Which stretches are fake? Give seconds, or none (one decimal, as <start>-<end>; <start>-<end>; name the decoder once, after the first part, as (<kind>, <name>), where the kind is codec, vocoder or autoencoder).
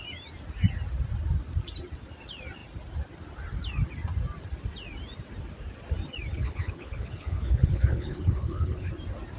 6.3-8.9 (codec, HILCodec)